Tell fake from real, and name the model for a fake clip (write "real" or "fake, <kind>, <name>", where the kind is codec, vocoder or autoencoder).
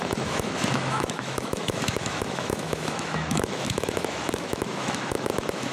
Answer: fake, autoencoder, DAC-VAE